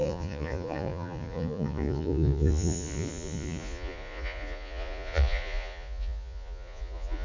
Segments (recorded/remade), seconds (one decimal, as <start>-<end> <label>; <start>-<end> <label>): 0.0-7.2 remade